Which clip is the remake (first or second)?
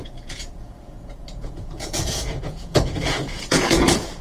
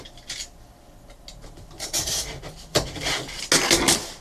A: first